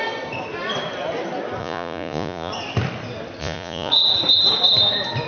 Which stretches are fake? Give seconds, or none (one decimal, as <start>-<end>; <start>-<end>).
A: 1.6-2.5; 3.4-3.9